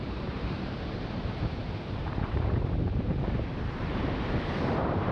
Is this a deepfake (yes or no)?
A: yes